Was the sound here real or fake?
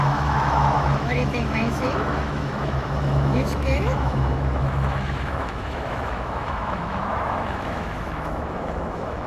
fake